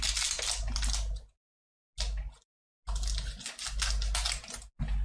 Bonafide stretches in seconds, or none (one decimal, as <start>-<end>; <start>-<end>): 0.0-5.0